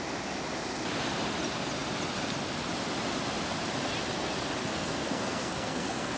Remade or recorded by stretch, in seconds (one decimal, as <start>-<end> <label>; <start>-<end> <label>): 0.0-4.6 recorded; 4.6-6.2 remade